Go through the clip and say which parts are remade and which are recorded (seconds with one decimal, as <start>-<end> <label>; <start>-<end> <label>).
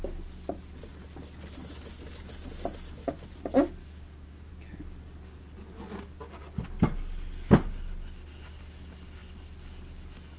0.0-3.8 recorded; 3.8-4.5 remade; 4.5-10.4 recorded